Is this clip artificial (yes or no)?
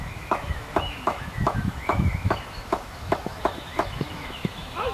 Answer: yes